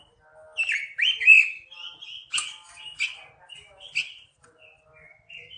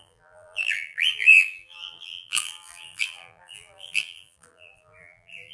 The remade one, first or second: second